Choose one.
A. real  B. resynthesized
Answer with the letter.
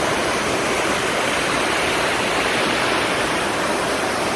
B